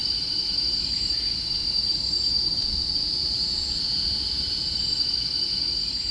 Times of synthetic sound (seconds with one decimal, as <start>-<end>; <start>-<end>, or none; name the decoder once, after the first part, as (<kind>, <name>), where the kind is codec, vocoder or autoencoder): 0.0-2.6 (vocoder, BigVGAN v2); 3.2-4.6